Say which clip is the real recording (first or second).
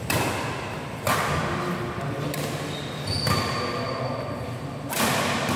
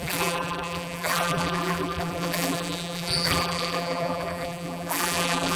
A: first